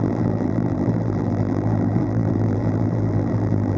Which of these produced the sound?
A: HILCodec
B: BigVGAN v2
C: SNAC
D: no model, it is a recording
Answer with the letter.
B